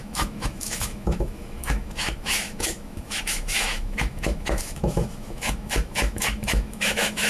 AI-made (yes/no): yes